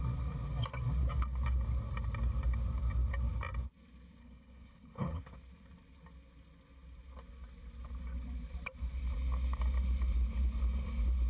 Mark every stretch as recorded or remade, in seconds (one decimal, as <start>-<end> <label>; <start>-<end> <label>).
0.0-4.2 recorded; 4.2-5.2 remade; 5.2-11.3 recorded